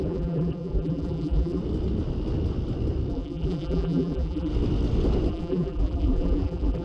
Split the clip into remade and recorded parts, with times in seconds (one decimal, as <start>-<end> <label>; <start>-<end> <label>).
0.0-1.6 remade; 1.6-3.1 recorded; 3.1-4.5 remade; 4.5-5.3 recorded; 5.3-6.8 remade